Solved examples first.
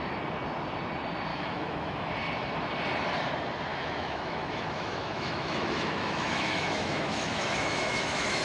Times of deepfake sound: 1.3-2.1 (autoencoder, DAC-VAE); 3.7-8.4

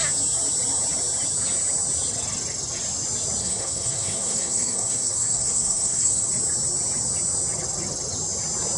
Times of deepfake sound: 3.4-6.3 (codec, SNAC)

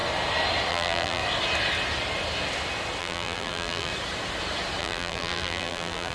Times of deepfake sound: 0.7-1.2 (vocoder, BigVGAN v2); 3.0-3.9; 4.8-6.1

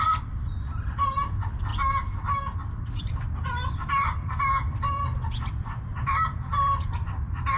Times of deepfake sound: 0.0-1.7 (vocoder, BigVGAN v2); 3.0-7.6